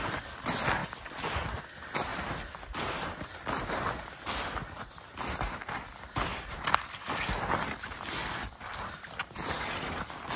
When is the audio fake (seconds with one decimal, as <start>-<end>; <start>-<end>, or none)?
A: 0.8-1.4; 6.3-7.5